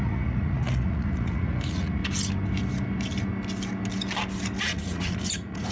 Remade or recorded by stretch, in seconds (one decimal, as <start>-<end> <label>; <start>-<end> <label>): 0.0-2.0 remade; 2.0-4.6 recorded; 4.6-5.7 remade